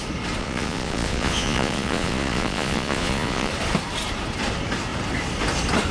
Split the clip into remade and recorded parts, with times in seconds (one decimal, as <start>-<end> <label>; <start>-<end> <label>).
0.0-0.4 recorded; 0.4-3.5 remade; 3.5-5.9 recorded